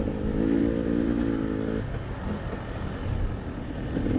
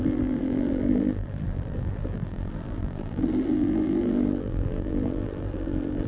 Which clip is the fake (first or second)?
second